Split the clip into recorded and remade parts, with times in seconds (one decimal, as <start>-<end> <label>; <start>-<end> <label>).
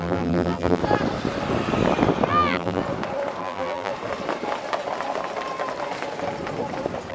0.0-0.8 remade; 0.8-2.3 recorded; 2.3-2.8 remade; 2.8-3.4 recorded; 3.4-3.9 remade; 3.9-7.1 recorded